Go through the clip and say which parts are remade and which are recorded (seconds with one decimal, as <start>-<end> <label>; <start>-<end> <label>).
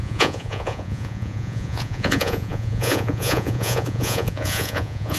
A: 0.0-5.2 remade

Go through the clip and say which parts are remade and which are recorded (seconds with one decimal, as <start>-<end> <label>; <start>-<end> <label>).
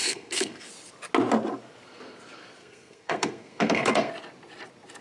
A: 0.0-0.7 remade; 0.7-2.6 recorded; 2.6-4.1 remade; 4.1-5.0 recorded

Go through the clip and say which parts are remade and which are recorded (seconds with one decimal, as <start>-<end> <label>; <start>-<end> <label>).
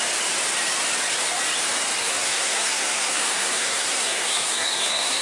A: 0.0-2.0 recorded; 2.0-5.2 remade